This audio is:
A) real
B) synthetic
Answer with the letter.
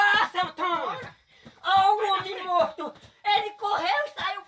A